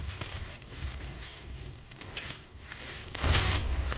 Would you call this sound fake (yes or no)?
yes